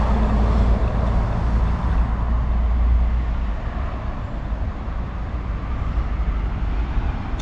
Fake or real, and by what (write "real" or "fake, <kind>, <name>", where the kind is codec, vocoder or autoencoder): real